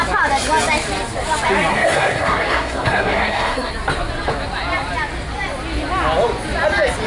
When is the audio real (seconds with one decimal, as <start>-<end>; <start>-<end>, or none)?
0.0-1.7; 3.7-7.1